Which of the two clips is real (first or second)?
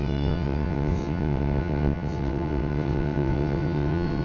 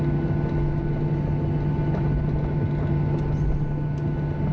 second